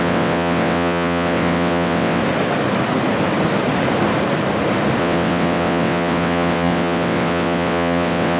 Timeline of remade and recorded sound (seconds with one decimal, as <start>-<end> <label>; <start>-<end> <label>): 0.0-2.2 remade; 2.2-5.0 recorded; 5.0-8.4 remade